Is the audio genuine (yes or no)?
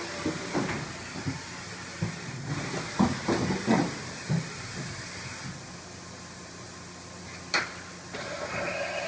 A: yes